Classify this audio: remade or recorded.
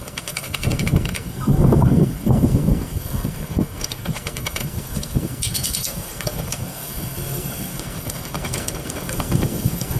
remade